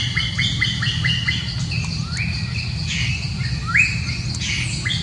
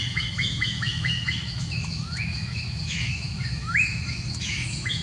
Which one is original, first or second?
first